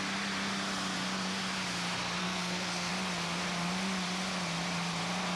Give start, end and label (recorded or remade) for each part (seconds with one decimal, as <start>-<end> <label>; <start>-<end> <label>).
0.0-2.2 recorded; 2.2-2.9 remade; 2.9-5.4 recorded